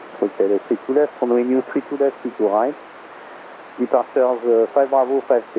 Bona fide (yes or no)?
yes